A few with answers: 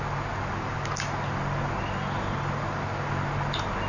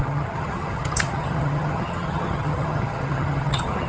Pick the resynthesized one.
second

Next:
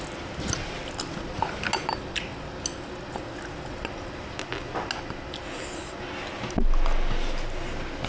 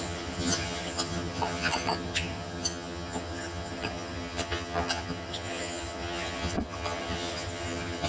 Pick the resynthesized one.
second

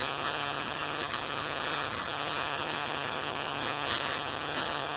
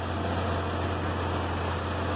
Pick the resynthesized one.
first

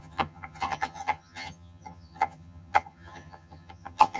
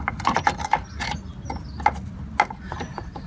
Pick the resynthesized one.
first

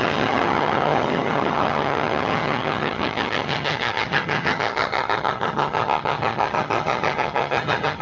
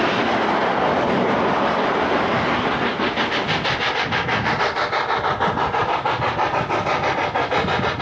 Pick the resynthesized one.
first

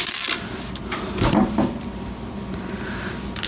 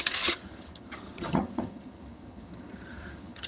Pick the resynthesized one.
second